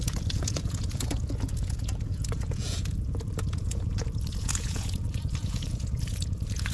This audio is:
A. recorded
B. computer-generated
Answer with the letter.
B